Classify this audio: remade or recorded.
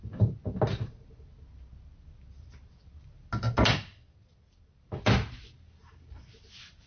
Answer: recorded